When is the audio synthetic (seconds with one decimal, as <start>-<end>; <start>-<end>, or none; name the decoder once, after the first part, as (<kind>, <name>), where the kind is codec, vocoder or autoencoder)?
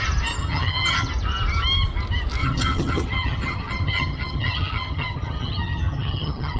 0.4-1.1 (vocoder, HiFi-GAN); 2.4-6.6